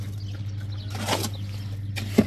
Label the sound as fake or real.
real